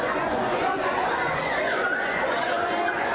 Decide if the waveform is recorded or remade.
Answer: remade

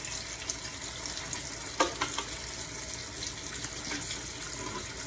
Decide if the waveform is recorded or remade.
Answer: recorded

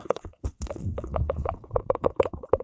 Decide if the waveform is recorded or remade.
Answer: remade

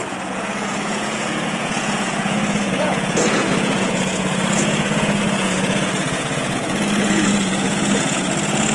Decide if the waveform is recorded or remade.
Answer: remade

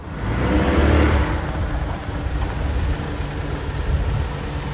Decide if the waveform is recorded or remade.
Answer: recorded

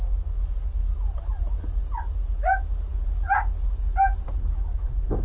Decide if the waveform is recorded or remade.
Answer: recorded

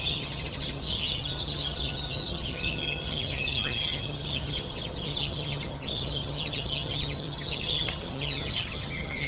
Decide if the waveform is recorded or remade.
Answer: remade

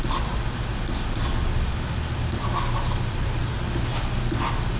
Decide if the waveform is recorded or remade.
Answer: recorded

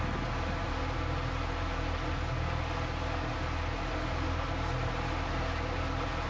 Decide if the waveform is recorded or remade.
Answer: recorded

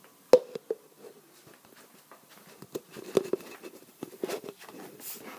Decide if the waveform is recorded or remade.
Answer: recorded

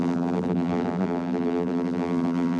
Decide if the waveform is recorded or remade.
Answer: remade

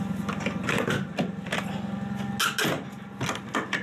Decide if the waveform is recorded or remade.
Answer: recorded